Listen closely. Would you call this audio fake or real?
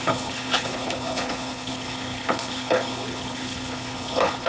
fake